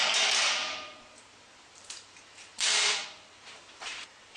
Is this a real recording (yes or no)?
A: no